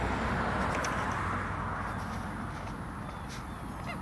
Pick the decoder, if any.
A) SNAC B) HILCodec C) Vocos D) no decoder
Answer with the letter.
D